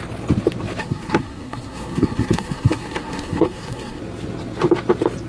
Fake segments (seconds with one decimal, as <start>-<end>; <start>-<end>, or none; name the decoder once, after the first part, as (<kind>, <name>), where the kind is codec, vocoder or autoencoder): 0.8-4.0 (codec, SNAC)